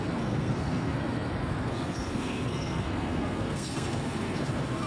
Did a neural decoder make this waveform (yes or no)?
yes